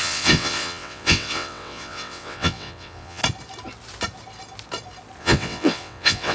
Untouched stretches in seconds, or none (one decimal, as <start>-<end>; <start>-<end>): 3.2-5.2